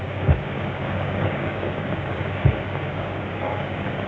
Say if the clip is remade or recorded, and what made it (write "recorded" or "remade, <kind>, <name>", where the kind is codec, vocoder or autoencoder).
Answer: remade, codec, DAC